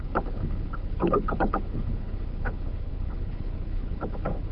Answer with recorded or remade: remade